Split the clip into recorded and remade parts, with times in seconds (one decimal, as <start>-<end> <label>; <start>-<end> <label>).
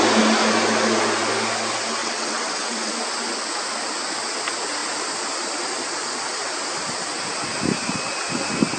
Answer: 0.0-2.0 recorded; 2.0-2.9 remade; 2.9-8.8 recorded